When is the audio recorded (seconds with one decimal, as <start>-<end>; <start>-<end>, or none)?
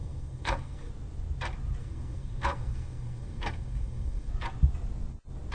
0.9-1.8; 4.3-5.5